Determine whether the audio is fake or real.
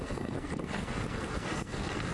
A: fake